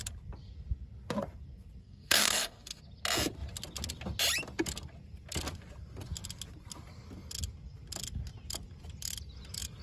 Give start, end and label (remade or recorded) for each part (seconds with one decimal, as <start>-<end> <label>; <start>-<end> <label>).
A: 0.0-1.8 recorded; 1.8-2.8 remade; 2.8-9.8 recorded